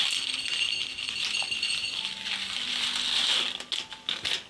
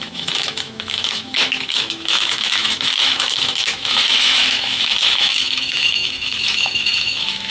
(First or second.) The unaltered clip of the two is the first